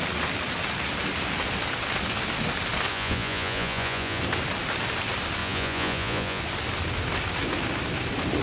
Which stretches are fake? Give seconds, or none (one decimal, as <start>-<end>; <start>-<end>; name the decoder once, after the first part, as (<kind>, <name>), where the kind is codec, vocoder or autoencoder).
2.9-4.2 (vocoder, Vocos); 5.4-6.4